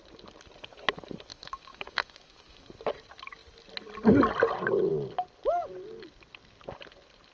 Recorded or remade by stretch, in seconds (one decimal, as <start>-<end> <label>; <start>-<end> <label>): 0.0-1.3 recorded; 1.3-2.7 remade; 2.7-7.3 recorded